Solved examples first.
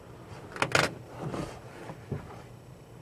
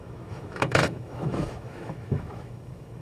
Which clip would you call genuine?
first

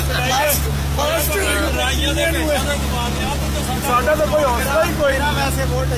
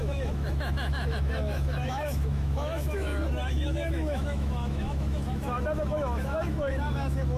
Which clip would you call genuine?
first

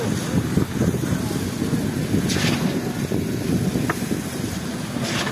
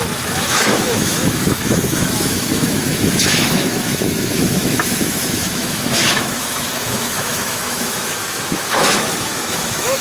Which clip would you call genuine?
first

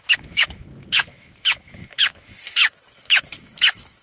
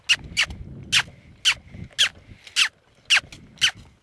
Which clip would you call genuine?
second